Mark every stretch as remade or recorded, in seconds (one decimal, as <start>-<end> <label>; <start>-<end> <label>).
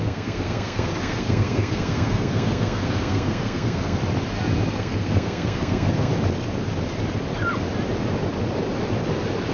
0.0-4.0 remade; 4.0-4.8 recorded; 4.8-6.1 remade; 6.1-9.5 recorded